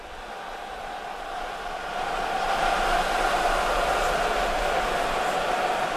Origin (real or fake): real